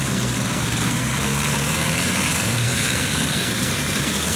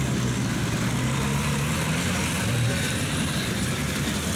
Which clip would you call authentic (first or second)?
second